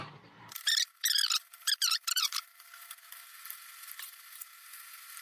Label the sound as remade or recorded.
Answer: remade